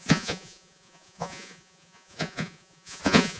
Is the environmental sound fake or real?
fake